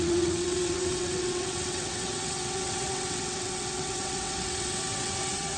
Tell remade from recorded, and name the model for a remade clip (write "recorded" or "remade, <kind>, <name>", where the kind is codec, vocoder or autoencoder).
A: remade, vocoder, WaveNeXt